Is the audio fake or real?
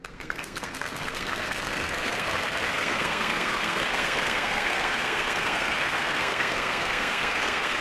fake